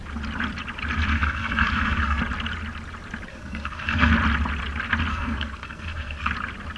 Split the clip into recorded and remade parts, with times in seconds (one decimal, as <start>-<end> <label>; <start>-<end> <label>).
0.0-1.1 recorded; 1.1-2.2 remade; 2.2-3.3 recorded; 3.3-4.1 remade; 4.1-5.1 recorded; 5.1-6.3 remade; 6.3-6.8 recorded